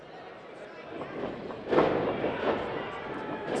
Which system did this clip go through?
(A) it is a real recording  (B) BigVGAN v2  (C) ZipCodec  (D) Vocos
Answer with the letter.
A